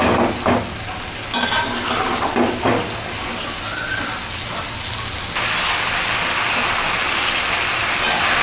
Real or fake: real